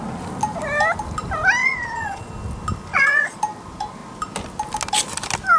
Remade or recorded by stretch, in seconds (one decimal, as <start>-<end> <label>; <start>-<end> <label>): 0.0-1.6 recorded; 1.6-2.3 remade; 2.3-2.9 recorded; 2.9-3.4 remade; 3.4-5.6 recorded